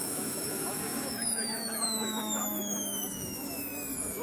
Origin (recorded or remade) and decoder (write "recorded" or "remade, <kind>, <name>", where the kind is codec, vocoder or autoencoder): remade, autoencoder, DAC-VAE